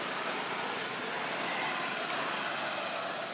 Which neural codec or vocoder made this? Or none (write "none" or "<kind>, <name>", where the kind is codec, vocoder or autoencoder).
none